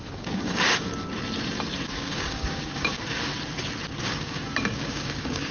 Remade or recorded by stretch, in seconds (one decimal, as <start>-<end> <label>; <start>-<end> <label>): 0.0-0.9 remade; 0.9-1.9 recorded; 1.9-3.3 remade; 3.3-4.0 recorded; 4.0-5.5 remade